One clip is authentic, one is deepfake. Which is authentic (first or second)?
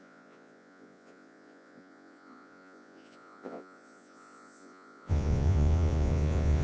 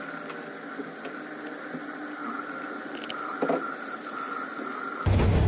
second